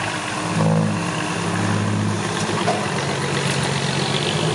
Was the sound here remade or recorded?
recorded